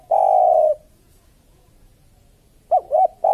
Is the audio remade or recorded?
remade